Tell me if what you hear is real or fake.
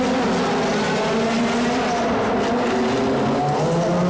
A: real